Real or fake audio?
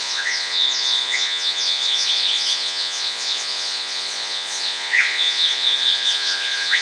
fake